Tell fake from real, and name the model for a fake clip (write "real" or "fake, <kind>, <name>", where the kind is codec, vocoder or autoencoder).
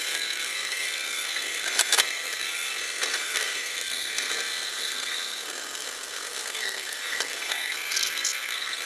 fake, codec, SNAC